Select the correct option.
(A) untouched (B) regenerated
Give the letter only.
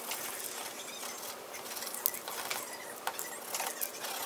A